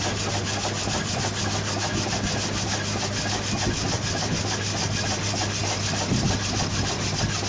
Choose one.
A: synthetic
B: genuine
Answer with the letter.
B